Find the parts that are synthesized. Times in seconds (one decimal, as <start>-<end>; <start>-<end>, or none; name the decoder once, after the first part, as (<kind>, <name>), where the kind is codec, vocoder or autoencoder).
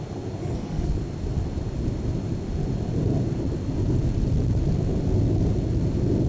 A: 0.4-0.9 (codec, SNAC)